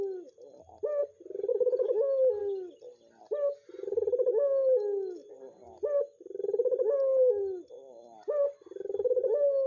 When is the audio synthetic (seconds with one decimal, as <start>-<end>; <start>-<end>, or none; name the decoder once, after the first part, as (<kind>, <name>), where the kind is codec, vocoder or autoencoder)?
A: none